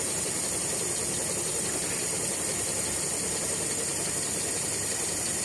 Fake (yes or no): no